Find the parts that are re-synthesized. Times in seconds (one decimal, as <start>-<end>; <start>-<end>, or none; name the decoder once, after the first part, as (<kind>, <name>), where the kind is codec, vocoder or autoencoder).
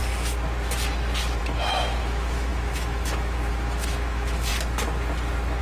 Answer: 1.4-4.5 (autoencoder, DAC-VAE)